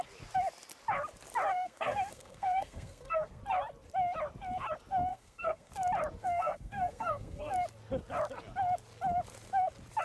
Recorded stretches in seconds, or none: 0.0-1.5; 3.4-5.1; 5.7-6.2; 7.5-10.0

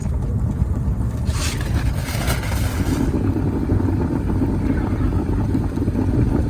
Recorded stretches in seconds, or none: 0.0-6.5

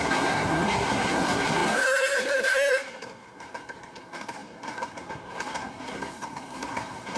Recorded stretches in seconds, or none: none

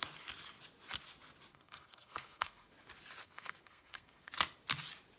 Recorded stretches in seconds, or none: 0.0-1.5; 2.7-3.2; 4.3-5.2

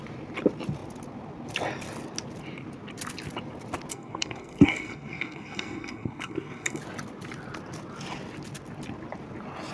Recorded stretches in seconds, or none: 0.0-3.9; 6.8-9.7

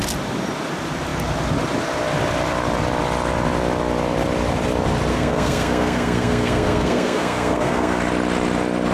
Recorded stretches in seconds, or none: 0.0-5.1; 8.0-8.9